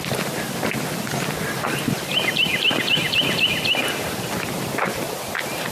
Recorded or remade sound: recorded